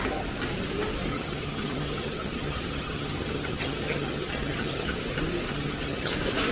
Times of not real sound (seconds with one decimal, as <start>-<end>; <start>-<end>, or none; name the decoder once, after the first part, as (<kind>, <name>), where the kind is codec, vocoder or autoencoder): 1.1-5.0 (vocoder, HiFi-GAN); 5.5-6.1